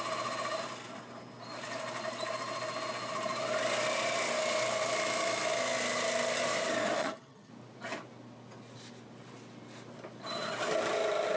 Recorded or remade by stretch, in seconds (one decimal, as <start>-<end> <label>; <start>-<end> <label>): 0.0-7.0 recorded; 7.0-7.5 remade; 7.5-11.4 recorded